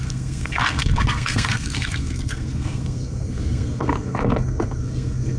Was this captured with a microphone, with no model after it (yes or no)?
no